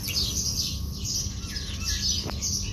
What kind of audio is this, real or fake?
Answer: real